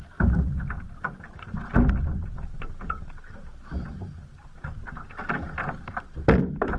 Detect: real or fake real